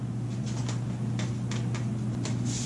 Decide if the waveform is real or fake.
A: real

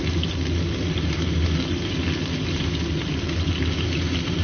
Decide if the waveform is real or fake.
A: real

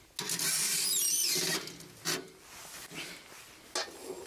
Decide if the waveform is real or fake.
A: real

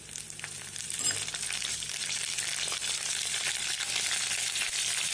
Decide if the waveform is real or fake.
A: fake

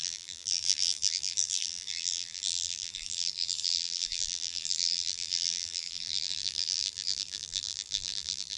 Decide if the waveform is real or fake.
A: fake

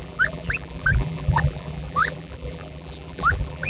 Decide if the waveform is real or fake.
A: fake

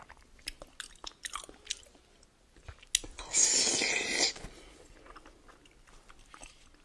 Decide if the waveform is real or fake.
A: real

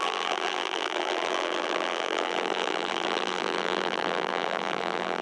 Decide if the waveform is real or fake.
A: fake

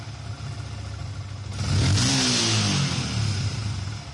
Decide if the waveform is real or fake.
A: real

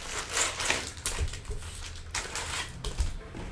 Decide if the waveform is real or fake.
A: real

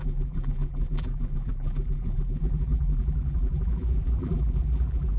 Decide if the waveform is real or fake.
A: fake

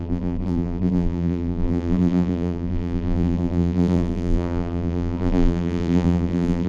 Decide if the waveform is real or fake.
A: fake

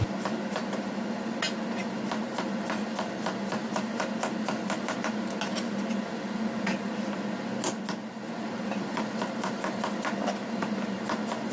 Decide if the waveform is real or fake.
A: real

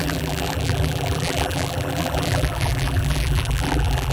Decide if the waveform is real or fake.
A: fake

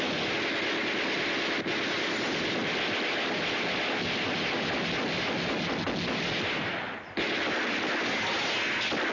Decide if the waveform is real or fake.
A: real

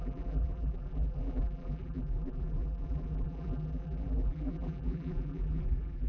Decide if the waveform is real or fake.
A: fake